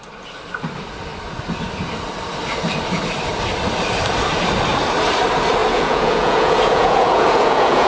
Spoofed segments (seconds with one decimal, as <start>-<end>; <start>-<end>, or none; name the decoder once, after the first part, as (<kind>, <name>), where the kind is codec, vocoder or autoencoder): 5.6-7.9 (vocoder, Vocos)